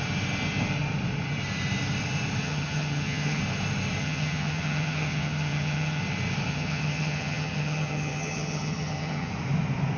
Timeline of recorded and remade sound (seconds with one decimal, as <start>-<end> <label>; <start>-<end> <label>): 0.0-2.4 recorded; 2.4-3.4 remade; 3.4-4.0 recorded; 4.0-6.0 remade; 6.0-6.5 recorded; 6.5-9.3 remade; 9.3-10.0 recorded